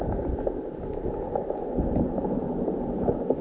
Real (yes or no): yes